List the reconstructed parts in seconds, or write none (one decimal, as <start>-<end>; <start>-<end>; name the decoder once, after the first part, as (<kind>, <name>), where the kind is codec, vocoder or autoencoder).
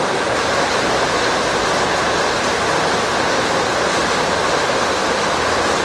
2.0-2.7 (vocoder, BigVGAN v2); 4.0-4.8